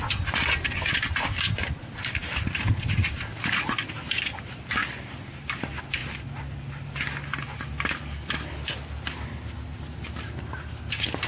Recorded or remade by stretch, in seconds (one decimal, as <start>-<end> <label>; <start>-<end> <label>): 0.0-11.3 recorded

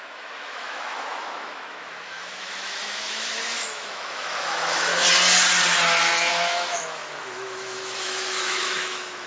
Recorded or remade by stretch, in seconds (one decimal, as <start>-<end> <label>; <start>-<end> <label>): 0.0-4.9 remade; 4.9-6.3 recorded; 6.3-9.3 remade

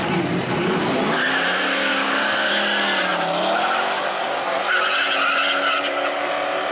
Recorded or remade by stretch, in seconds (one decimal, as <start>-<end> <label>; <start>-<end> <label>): 0.0-1.9 recorded; 1.9-2.5 remade; 2.5-5.7 recorded; 5.7-6.3 remade; 6.3-6.7 recorded